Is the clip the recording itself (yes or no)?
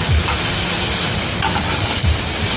yes